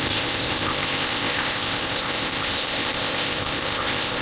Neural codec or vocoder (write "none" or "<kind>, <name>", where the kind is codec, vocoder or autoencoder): codec, ZipCodec